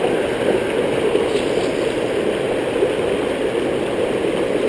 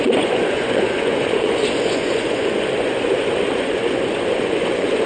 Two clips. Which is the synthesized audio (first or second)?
second